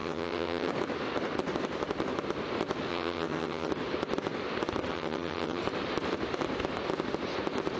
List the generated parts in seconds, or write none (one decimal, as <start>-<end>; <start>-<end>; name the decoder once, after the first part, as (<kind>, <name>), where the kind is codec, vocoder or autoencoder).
0.0-0.7 (vocoder, HiFi-GAN); 2.9-3.7; 4.9-5.6